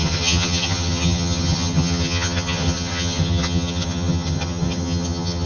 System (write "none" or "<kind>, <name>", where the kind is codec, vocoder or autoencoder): vocoder, HiFi-GAN